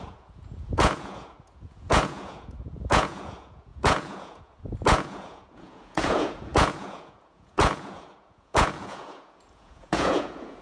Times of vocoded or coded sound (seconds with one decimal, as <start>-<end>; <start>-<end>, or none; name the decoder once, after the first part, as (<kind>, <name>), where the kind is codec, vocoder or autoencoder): 0.0-10.6 (vocoder, Vocos)